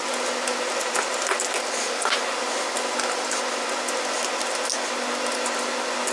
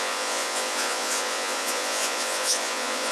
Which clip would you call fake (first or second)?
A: second